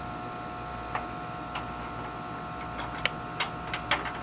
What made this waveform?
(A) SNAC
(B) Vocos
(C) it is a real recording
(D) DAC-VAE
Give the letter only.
C